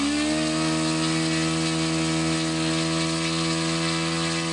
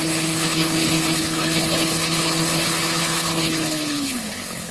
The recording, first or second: first